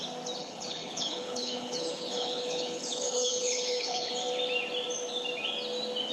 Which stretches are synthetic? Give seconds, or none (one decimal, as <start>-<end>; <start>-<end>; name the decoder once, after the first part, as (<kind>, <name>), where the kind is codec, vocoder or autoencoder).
0.4-4.1 (codec, HILCodec)